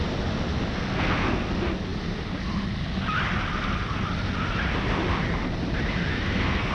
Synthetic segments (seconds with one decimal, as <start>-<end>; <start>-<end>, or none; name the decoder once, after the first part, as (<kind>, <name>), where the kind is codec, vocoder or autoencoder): 0.7-1.5 (codec, SNAC); 6.1-6.7